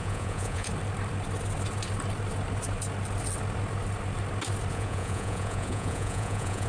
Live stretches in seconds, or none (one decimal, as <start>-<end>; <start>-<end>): 0.7-4.7